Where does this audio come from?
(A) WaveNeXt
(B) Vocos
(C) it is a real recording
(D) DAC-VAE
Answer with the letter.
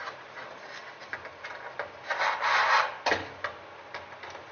C